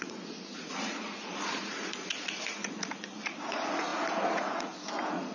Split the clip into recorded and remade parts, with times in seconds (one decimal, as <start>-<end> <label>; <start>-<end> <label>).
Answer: 0.0-5.3 remade